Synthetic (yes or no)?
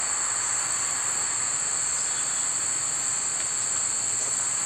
no